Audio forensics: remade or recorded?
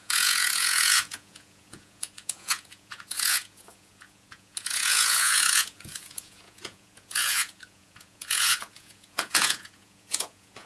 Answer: remade